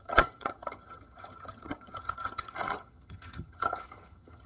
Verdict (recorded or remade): remade